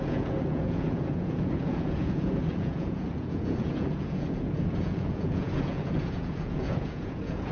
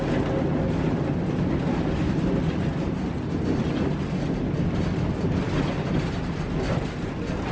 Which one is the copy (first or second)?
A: first